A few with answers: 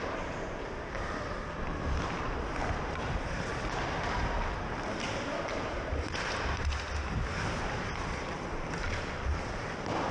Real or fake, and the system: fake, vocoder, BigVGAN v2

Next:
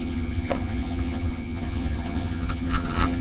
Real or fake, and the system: fake, vocoder, HiFi-GAN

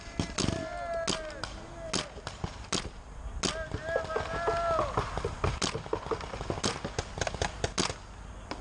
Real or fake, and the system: real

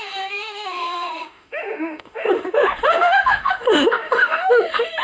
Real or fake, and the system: fake, autoencoder, DAC-VAE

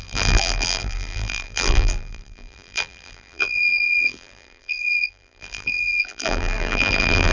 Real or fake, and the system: fake, vocoder, BigVGAN v2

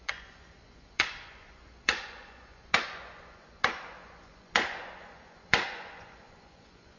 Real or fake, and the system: fake, vocoder, Vocos